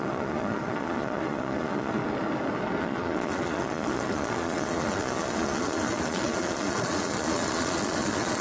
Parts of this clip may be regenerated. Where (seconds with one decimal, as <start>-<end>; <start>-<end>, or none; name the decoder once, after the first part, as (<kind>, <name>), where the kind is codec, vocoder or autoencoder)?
0.0-2.0 (vocoder, Vocos); 2.8-8.4

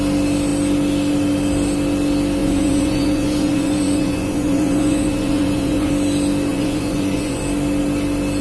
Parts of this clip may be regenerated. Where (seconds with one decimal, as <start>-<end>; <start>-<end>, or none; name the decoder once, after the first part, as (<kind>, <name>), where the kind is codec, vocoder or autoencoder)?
2.4-5.9 (vocoder, Vocos); 6.5-7.4

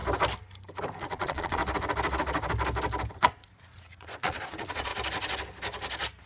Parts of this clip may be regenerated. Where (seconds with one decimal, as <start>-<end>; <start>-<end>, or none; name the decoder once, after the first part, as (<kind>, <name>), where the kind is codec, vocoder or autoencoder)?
1.0-1.6 (vocoder, Vocos); 3.1-4.9

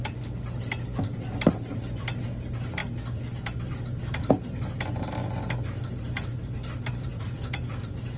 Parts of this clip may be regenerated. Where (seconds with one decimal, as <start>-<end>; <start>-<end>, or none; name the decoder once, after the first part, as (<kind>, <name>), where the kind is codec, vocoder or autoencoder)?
7.1-7.7 (vocoder, Vocos)

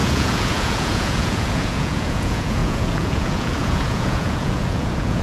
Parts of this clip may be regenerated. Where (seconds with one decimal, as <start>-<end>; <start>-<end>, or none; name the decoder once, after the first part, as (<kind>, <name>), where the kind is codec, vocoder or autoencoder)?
0.0-5.2 (vocoder, Vocos)

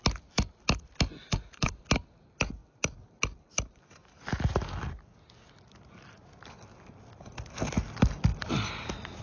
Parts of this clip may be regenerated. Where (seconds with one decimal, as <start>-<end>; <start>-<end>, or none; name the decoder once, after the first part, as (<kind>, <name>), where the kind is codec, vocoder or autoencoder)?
1.2-1.8 (vocoder, Vocos)